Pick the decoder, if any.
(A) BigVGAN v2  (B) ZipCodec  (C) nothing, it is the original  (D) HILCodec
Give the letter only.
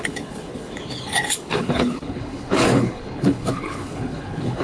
D